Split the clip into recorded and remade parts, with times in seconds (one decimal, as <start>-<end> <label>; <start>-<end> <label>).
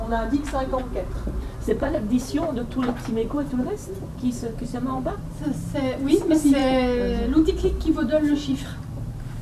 0.0-6.6 remade; 6.6-7.5 recorded; 7.5-9.4 remade